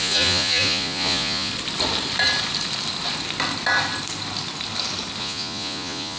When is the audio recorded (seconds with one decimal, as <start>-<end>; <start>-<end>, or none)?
1.5-5.2

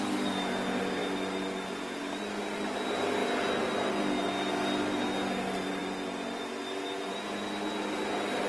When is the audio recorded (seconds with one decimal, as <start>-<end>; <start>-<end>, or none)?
0.0-8.5